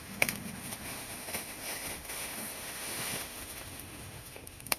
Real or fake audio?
fake